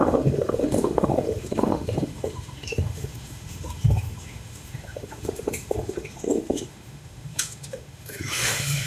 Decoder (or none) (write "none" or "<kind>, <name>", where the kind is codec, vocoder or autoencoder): autoencoder, DAC-VAE